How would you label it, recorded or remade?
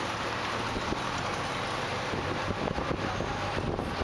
recorded